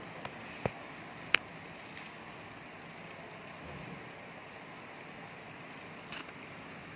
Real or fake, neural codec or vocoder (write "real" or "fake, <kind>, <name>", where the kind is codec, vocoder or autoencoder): real